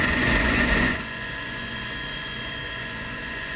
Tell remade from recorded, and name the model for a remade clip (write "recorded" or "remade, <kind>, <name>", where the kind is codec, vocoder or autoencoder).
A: remade, vocoder, Vocos